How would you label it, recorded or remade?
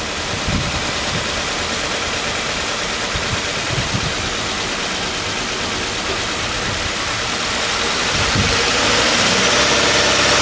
recorded